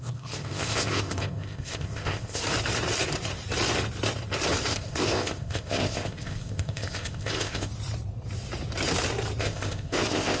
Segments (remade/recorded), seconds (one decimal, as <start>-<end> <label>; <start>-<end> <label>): 0.0-2.4 remade; 2.4-4.7 recorded; 4.7-7.7 remade; 7.7-9.4 recorded; 9.4-10.4 remade